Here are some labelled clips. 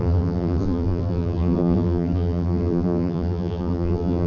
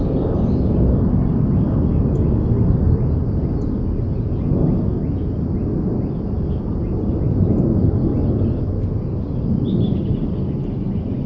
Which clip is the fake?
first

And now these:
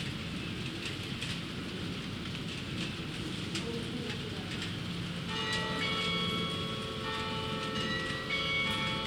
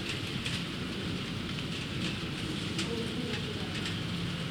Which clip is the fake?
second